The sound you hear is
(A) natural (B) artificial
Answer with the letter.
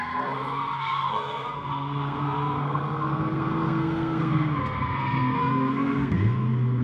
B